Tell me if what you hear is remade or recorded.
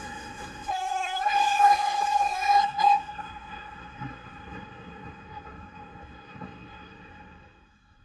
remade